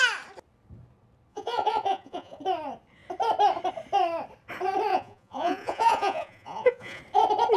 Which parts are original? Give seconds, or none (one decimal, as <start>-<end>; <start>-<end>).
0.0-1.3; 2.4-4.9; 7.0-7.6

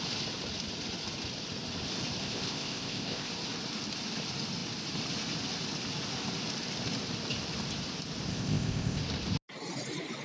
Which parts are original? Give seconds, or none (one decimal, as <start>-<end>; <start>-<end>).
0.0-2.2; 3.3-8.3; 9.0-10.2

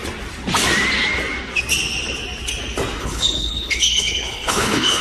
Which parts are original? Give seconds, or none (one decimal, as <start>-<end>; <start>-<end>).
0.0-3.0

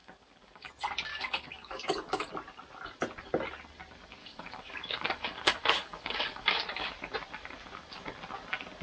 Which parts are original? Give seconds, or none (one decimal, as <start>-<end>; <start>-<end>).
0.7-1.1; 2.3-4.2; 6.9-8.8

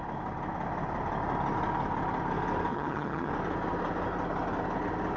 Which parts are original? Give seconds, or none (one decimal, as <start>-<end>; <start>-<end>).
0.0-2.7; 3.3-5.2

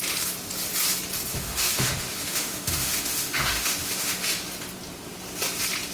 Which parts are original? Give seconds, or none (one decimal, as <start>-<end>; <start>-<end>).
0.0-1.3; 4.4-5.9

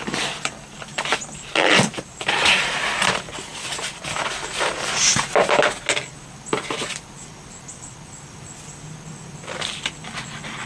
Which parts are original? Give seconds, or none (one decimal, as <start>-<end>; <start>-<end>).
0.0-0.9; 2.7-10.7

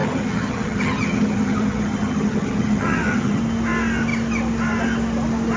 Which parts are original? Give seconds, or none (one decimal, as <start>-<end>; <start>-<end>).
3.4-5.6